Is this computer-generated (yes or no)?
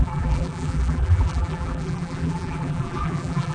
yes